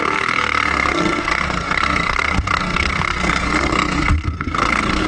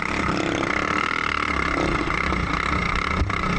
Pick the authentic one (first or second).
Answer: second